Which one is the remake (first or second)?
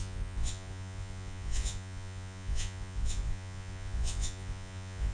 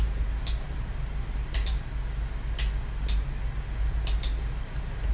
first